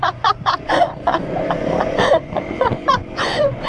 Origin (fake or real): fake